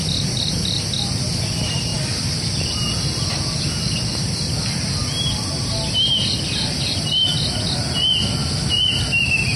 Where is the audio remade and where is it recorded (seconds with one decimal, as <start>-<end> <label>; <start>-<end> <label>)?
0.0-9.6 recorded